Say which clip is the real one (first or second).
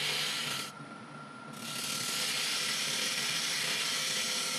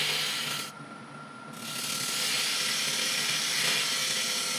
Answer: second